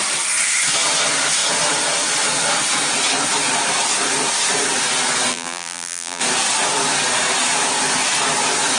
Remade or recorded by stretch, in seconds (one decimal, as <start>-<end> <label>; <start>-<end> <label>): 0.0-5.3 recorded; 5.3-6.2 remade; 6.2-8.8 recorded